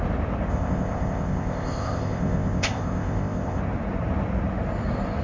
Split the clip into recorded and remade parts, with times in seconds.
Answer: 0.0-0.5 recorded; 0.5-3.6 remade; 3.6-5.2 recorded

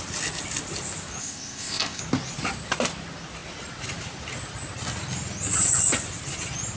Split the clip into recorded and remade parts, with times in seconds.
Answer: 0.0-1.2 recorded; 1.2-2.0 remade; 2.0-6.8 recorded

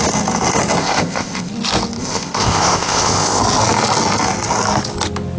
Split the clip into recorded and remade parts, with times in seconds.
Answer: 0.0-0.8 recorded; 0.8-1.5 remade; 1.5-2.0 recorded; 2.0-3.4 remade; 3.4-5.4 recorded

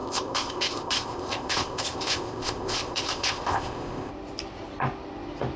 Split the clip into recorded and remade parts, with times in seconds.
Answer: 0.0-4.1 remade; 4.1-5.6 recorded

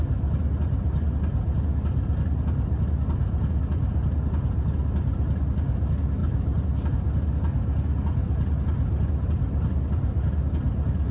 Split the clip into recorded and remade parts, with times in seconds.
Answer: 0.0-11.1 recorded